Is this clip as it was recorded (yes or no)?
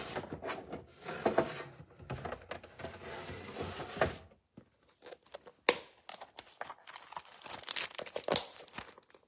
yes